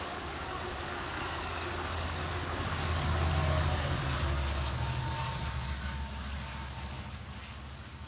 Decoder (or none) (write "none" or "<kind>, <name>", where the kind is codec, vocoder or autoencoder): codec, DAC